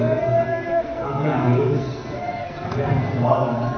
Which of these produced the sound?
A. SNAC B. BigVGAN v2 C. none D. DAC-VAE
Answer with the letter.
A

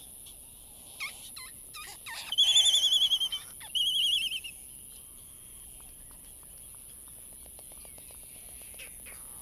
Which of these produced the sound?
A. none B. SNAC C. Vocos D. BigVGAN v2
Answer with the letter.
A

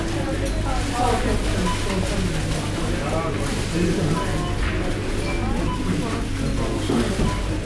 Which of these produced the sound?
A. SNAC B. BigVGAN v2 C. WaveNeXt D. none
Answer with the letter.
D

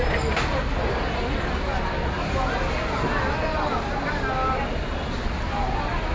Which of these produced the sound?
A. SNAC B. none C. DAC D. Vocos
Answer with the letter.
B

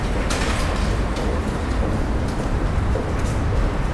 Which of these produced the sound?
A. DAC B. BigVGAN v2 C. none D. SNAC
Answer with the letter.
C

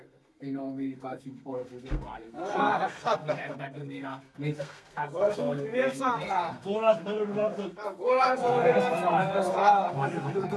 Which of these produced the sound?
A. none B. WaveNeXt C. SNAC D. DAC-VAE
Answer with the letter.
C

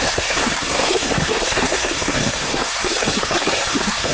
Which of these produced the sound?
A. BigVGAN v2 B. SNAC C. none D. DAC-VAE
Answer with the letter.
B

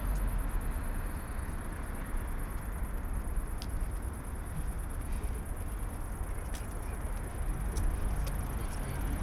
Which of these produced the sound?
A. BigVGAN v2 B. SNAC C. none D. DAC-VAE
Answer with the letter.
C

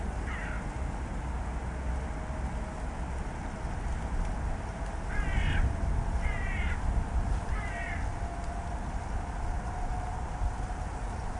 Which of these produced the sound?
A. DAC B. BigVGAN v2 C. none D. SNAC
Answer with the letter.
C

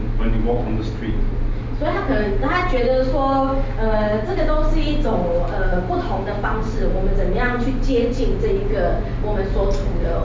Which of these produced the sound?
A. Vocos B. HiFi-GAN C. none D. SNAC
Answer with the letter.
C